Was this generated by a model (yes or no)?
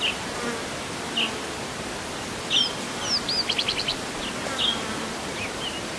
no